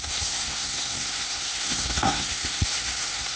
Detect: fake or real fake